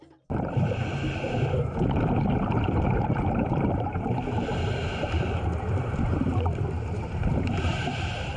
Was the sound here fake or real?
fake